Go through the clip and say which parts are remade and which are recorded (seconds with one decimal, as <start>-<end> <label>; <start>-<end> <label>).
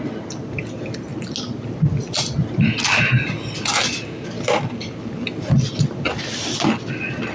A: 0.0-7.3 recorded